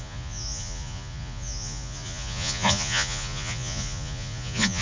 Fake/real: fake